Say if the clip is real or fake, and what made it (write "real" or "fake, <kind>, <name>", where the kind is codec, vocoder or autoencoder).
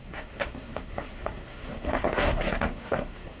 fake, codec, SNAC